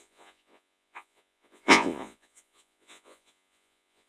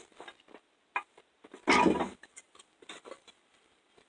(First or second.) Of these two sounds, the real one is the second